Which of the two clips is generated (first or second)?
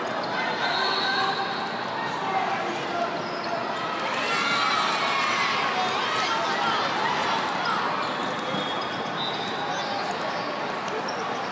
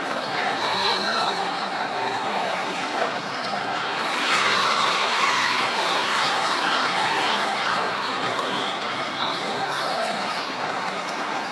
second